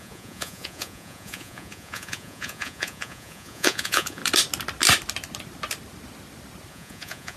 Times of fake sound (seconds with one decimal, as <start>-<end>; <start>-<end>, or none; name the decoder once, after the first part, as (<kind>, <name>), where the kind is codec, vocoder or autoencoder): 0.0-4.2 (vocoder, Vocos); 6.7-7.4